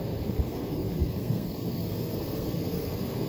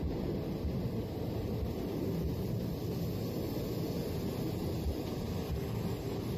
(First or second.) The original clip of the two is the second